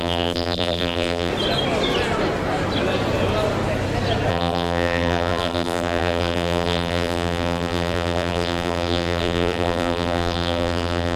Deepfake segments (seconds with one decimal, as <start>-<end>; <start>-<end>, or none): 0.0-1.3; 4.3-11.2